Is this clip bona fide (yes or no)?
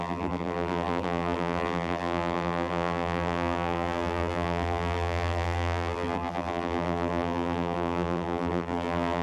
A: no